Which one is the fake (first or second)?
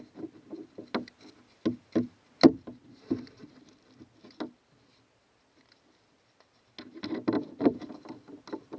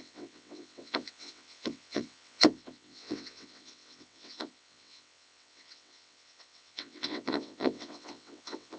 second